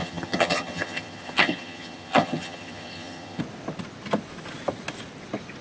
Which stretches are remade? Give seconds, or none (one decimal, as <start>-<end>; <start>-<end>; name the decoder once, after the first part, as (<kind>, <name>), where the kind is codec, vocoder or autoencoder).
0.0-3.4 (vocoder, HiFi-GAN)